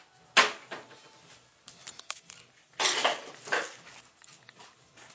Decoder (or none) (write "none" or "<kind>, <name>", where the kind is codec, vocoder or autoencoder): none